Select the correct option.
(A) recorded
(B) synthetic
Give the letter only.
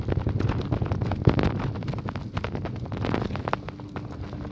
A